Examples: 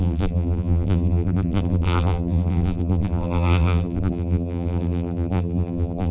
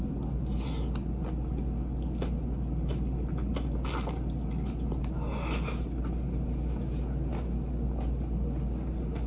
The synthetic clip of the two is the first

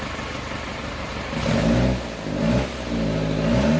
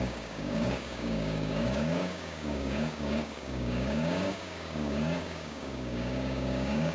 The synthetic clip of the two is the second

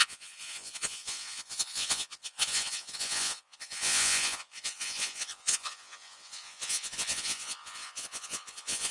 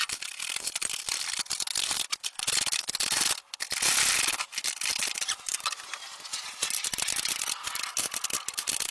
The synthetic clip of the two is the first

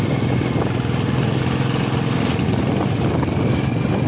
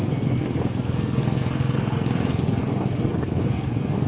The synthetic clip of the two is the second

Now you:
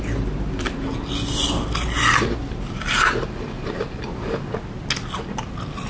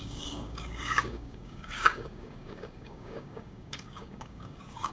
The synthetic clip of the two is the second